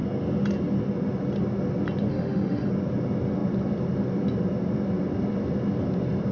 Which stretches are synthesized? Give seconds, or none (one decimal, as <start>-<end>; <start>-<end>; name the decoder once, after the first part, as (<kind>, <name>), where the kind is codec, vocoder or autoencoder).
2.1-2.7 (autoencoder, DAC-VAE)